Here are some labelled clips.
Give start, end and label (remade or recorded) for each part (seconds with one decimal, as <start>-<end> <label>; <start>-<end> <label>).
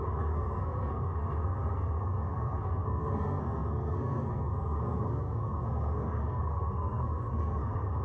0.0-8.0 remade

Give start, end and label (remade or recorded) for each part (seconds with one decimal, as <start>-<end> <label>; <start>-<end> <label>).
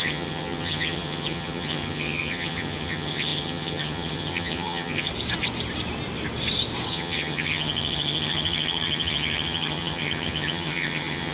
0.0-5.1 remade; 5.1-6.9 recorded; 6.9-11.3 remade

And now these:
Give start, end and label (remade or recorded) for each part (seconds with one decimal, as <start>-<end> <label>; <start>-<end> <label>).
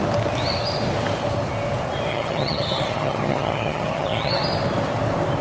0.0-2.1 recorded; 2.1-4.4 remade; 4.4-5.4 recorded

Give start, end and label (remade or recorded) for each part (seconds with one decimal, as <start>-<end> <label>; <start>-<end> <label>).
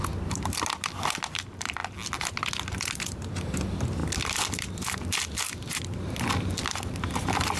0.0-7.6 recorded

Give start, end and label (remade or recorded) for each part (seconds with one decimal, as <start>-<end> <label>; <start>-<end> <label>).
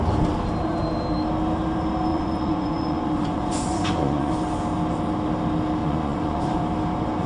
0.0-2.1 recorded; 2.1-4.3 remade; 4.3-5.8 recorded; 5.8-6.6 remade; 6.6-7.3 recorded